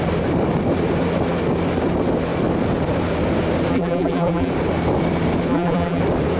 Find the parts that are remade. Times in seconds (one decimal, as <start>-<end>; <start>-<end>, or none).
3.7-4.5; 5.5-6.0